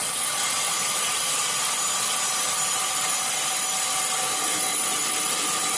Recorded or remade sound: recorded